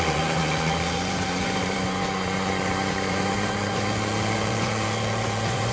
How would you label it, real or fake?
fake